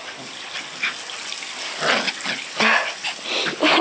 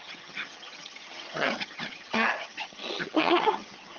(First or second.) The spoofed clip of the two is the second